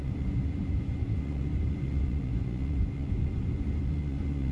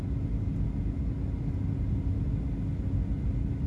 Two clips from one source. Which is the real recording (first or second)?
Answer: second